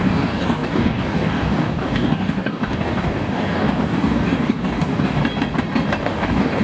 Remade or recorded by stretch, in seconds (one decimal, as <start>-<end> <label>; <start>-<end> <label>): 0.0-5.2 remade; 5.2-6.0 recorded; 6.0-6.6 remade